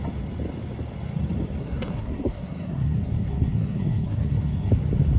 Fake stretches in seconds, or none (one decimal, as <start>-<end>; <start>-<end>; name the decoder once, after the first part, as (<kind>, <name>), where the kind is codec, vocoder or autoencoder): 1.6-4.7 (codec, SNAC)